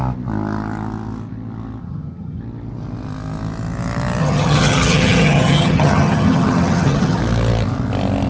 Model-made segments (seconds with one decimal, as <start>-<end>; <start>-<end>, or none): 1.8-2.4; 4.2-7.2